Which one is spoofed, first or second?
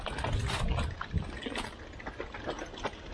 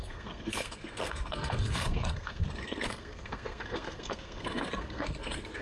second